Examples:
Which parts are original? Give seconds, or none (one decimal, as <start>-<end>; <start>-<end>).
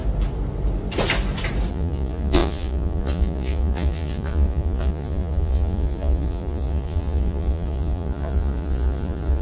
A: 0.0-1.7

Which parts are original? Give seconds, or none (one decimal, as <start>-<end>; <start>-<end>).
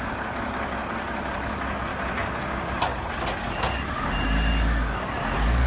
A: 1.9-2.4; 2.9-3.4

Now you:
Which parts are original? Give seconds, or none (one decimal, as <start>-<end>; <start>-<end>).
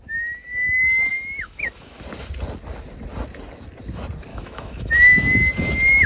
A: 0.0-1.1; 2.0-4.3; 5.5-6.1